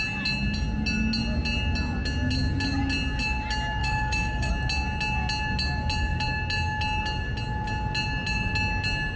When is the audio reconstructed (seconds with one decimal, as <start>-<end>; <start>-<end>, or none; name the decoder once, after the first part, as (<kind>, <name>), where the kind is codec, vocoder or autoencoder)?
3.8-4.5 (codec, DAC)